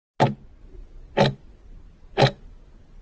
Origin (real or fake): real